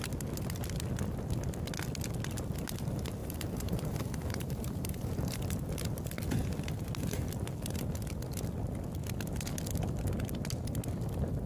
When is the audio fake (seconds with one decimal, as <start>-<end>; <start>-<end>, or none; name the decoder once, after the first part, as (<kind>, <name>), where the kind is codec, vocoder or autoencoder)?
3.2-5.4 (vocoder, BigVGAN v2)